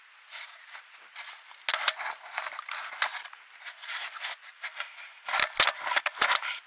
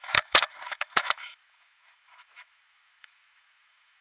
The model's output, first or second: second